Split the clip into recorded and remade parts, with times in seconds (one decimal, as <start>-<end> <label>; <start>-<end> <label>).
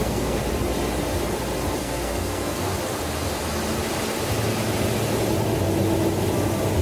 0.0-0.4 remade; 0.4-1.8 recorded; 1.8-2.7 remade; 2.7-6.8 recorded